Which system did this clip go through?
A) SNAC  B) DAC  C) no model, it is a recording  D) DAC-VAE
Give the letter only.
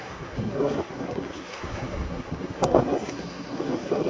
A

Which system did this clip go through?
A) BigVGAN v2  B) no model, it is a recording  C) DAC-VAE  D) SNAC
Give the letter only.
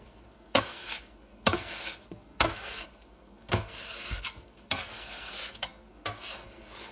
D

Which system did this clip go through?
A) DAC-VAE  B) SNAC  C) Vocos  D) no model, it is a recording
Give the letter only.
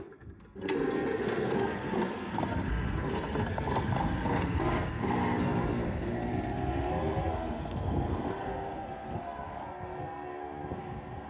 B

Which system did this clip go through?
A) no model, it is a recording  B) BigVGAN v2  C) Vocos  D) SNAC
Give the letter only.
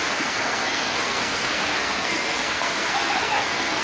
D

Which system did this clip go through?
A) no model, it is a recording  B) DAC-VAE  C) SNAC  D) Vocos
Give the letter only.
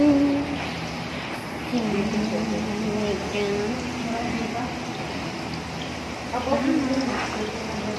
A